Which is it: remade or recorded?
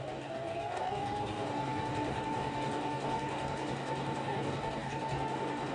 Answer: remade